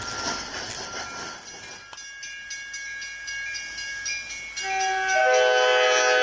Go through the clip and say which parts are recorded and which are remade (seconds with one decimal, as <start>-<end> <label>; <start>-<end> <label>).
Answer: 0.0-6.2 recorded